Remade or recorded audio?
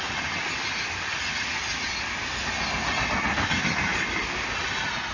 recorded